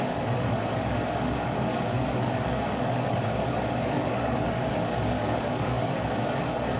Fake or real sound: fake